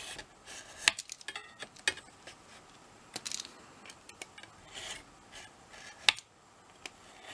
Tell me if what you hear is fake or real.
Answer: real